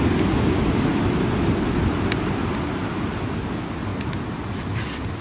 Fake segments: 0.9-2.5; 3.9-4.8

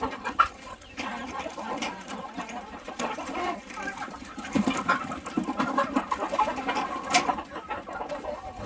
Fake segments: 0.0-4.8; 8.1-8.7